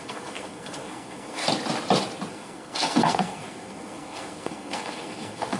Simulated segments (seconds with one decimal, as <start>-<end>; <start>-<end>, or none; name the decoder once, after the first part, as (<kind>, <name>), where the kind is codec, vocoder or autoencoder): 0.0-1.4 (codec, SNAC); 2.3-5.6